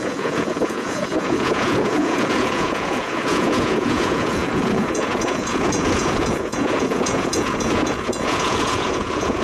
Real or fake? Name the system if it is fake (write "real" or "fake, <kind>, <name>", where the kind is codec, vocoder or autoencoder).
fake, vocoder, Vocos